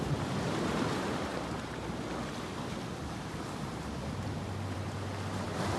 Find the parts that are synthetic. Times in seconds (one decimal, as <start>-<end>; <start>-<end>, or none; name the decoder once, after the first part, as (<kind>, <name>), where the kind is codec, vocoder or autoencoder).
0.0-5.8 (vocoder, BigVGAN v2)

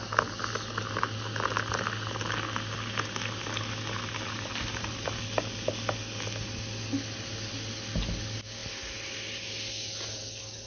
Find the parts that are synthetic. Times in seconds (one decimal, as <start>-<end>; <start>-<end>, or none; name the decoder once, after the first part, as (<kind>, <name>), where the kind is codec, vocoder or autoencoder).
none

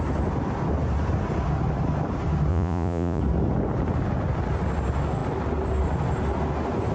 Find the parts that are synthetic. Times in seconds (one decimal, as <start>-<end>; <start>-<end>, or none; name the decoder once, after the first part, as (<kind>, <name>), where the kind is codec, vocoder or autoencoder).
2.5-3.2 (vocoder, Vocos)

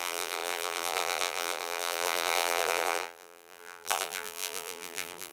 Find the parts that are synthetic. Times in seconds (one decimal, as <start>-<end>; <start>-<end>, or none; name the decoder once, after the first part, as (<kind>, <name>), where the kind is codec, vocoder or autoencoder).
0.0-5.3 (vocoder, BigVGAN v2)

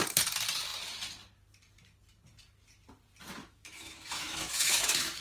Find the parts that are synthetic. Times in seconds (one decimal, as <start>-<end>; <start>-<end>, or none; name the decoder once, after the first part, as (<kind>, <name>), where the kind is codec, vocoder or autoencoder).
3.4-5.2 (autoencoder, DAC-VAE)

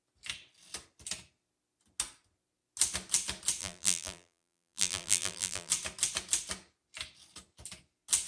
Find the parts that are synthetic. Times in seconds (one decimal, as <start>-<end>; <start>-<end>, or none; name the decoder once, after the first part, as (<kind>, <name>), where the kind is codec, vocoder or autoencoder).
3.6-5.7 (vocoder, BigVGAN v2)

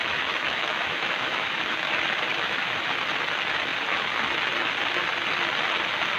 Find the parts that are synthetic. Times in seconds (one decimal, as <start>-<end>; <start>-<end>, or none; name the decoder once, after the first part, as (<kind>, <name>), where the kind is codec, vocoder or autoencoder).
0.0-1.6 (autoencoder, DAC-VAE); 2.3-2.9